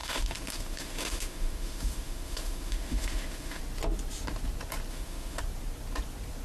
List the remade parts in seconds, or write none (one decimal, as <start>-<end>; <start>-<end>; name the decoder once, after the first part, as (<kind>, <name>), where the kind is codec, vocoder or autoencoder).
0.0-3.6 (autoencoder, DAC-VAE); 4.9-5.4